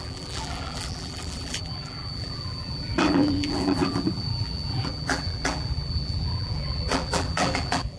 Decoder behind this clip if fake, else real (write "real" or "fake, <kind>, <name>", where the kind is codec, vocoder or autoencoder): fake, vocoder, BigVGAN v2